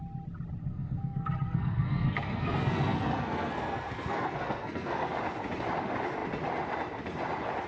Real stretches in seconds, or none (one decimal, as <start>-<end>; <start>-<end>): 0.0-0.6; 5.1-7.7

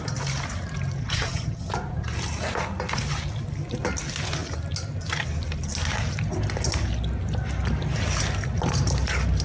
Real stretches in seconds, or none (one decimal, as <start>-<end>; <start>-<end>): 0.0-1.0; 1.7-9.4